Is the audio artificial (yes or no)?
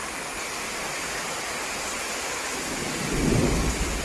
no